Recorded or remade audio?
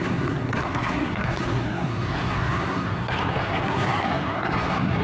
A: remade